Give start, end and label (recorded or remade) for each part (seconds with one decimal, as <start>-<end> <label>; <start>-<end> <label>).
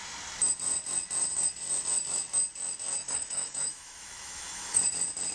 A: 0.0-3.0 recorded; 3.0-4.8 remade; 4.8-5.3 recorded